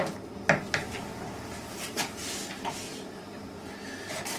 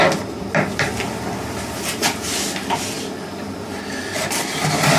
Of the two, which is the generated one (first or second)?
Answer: second